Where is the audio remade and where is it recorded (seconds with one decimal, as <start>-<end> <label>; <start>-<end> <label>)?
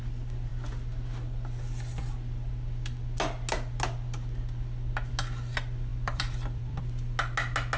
0.0-5.9 recorded; 5.9-6.8 remade; 6.8-7.8 recorded